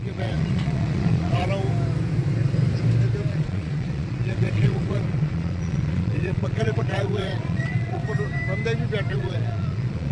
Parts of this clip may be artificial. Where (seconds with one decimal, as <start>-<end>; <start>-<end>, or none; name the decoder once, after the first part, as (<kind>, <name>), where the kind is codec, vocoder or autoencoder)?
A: 0.0-1.5 (vocoder, Vocos); 3.3-8.0; 9.1-10.1